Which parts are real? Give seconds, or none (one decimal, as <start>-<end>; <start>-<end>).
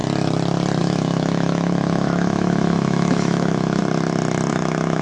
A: 0.0-0.8; 3.8-4.5